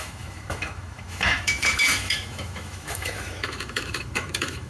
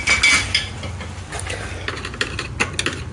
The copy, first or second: first